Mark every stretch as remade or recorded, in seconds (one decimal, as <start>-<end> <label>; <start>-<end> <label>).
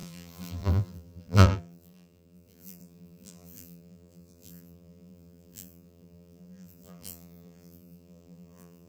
0.0-8.9 remade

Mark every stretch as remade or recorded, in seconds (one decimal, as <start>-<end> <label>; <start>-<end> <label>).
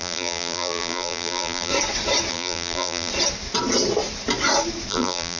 0.0-1.7 remade; 1.7-2.3 recorded; 2.3-3.1 remade; 3.1-4.9 recorded; 4.9-5.4 remade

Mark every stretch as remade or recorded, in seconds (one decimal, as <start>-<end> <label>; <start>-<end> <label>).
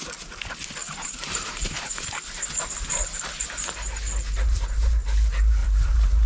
0.0-0.8 recorded; 0.8-2.5 remade; 2.5-5.6 recorded; 5.6-6.3 remade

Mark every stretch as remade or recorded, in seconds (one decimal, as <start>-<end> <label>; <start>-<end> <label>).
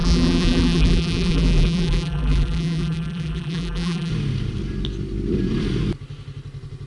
0.0-4.1 remade; 4.1-6.9 recorded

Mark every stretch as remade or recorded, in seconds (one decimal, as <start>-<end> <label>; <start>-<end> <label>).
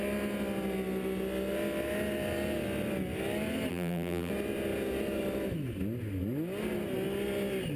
0.0-3.7 recorded; 3.7-4.3 remade; 4.3-7.8 recorded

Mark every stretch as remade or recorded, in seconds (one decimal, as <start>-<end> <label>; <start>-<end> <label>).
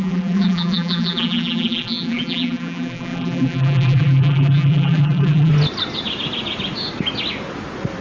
0.0-5.5 remade; 5.5-8.0 recorded